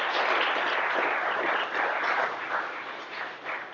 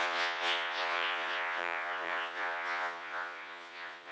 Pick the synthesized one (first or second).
second